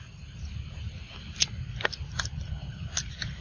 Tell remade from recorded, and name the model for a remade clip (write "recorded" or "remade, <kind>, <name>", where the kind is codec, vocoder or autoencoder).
recorded